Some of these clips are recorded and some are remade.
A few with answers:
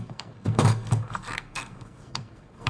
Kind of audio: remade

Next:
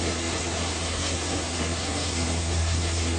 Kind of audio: remade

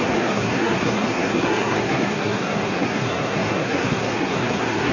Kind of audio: remade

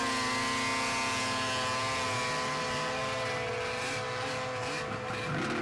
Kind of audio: recorded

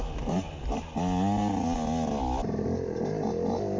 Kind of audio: recorded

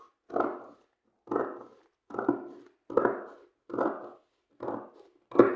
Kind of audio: recorded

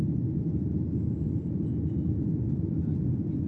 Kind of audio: recorded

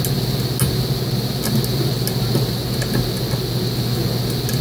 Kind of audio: recorded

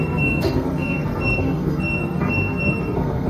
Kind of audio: remade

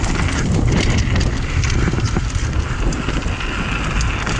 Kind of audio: recorded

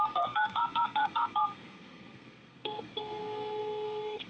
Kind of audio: remade